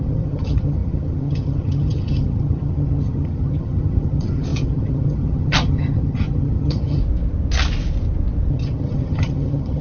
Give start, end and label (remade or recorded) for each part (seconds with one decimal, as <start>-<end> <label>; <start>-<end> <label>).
0.0-7.0 remade; 7.0-8.5 recorded; 8.5-9.8 remade